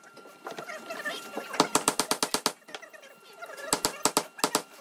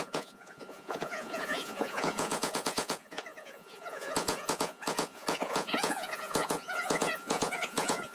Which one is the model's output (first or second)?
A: second